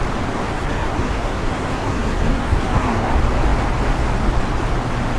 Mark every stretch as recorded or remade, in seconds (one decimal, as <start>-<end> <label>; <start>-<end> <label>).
0.0-0.5 recorded; 0.5-3.1 remade; 3.1-5.2 recorded